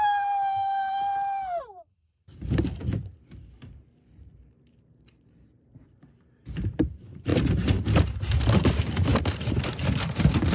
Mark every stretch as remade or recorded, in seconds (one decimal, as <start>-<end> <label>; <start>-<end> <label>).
0.0-2.8 remade; 2.8-3.8 recorded; 3.8-7.3 remade; 7.3-7.9 recorded; 7.9-9.1 remade; 9.1-10.5 recorded